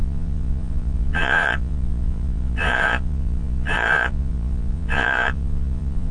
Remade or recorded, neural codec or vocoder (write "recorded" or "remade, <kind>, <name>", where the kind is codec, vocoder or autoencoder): remade, vocoder, Vocos